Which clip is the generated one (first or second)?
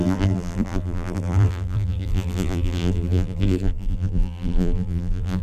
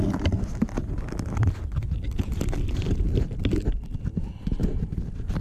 first